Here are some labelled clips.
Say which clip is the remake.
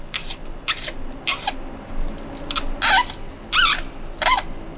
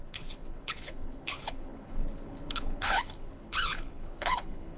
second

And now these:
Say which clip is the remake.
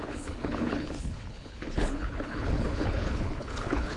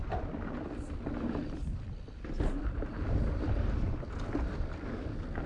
first